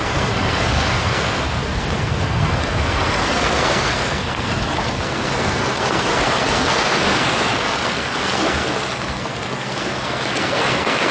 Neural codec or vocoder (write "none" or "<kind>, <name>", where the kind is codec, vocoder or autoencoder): codec, SNAC